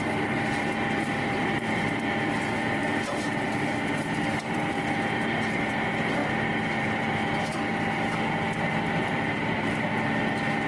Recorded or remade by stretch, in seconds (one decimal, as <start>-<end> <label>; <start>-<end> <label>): 0.0-6.2 remade; 6.2-8.6 recorded; 8.6-9.9 remade; 9.9-10.7 recorded